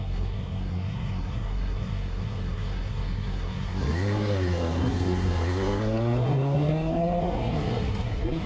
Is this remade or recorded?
remade